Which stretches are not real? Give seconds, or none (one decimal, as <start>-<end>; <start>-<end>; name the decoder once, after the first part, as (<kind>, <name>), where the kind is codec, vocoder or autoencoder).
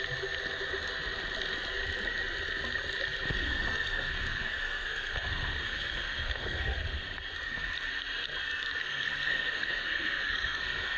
3.3-7.2 (codec, SNAC); 8.8-11.0